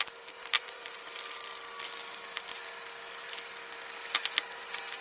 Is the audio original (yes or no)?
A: yes